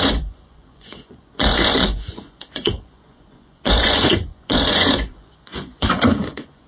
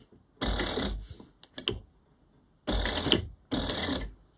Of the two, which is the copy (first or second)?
first